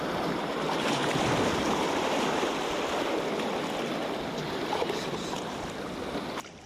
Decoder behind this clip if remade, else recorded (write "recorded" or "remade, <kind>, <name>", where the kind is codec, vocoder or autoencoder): recorded